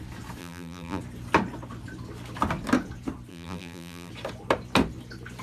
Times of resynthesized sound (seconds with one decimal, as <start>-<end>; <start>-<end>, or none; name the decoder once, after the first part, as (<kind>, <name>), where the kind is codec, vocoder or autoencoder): 0.4-1.0 (vocoder, BigVGAN v2); 3.3-4.1